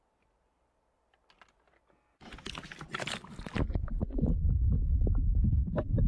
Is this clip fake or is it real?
real